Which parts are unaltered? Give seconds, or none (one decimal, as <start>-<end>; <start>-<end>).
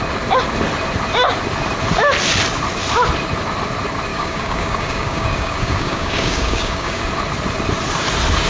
0.0-4.1; 7.0-8.5